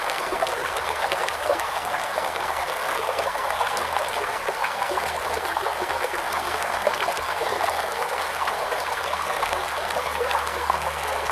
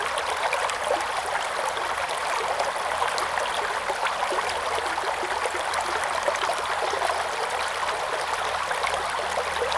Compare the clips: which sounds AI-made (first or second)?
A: first